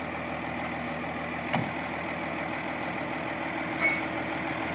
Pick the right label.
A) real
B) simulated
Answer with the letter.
A